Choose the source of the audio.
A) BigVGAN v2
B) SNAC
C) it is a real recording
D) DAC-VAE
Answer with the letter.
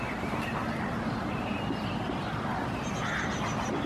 C